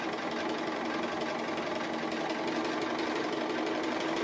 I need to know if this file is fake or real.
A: real